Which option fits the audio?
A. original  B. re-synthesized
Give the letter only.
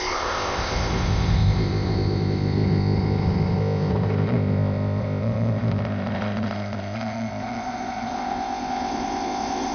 B